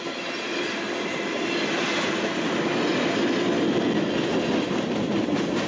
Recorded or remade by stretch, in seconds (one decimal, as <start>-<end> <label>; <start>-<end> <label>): 0.0-5.7 recorded